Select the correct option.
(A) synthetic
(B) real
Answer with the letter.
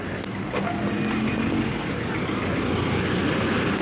B